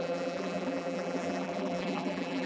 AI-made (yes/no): yes